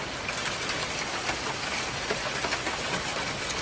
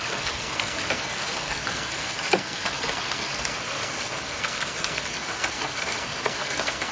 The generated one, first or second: second